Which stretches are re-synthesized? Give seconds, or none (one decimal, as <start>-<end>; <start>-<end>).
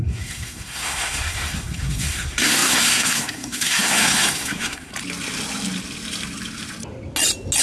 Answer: 0.0-4.9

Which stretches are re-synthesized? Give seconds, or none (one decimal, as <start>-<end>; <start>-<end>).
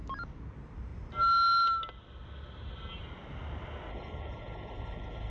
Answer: 3.9-5.3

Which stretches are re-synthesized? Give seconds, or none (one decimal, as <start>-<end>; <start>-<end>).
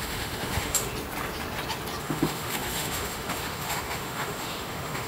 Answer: 0.0-0.8; 2.0-5.1